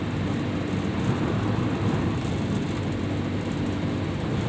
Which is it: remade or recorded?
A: recorded